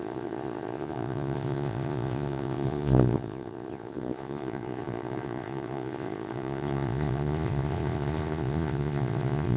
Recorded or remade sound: remade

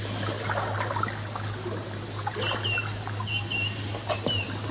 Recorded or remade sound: recorded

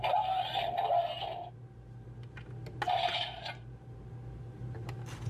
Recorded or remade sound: recorded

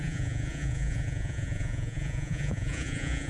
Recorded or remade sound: remade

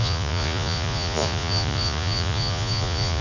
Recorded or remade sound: remade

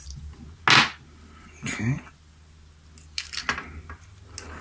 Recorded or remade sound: recorded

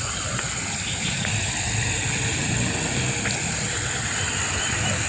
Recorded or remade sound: recorded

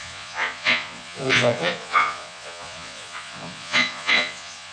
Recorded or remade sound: remade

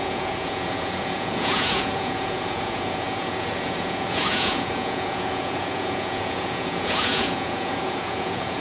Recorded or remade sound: remade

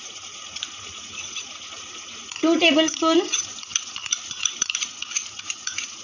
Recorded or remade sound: remade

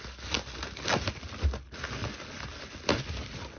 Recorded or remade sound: recorded